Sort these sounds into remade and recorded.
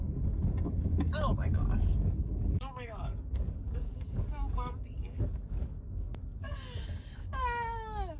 remade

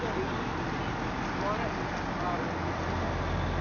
recorded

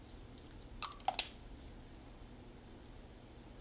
recorded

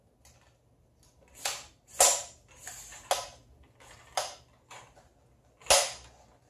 recorded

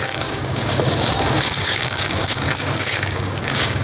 remade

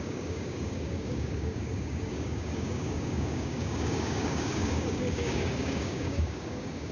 remade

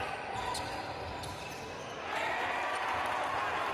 recorded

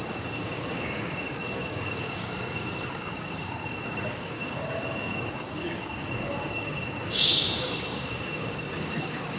remade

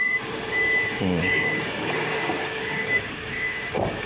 remade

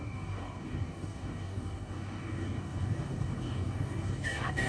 remade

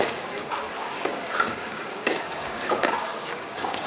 remade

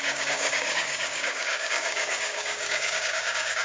remade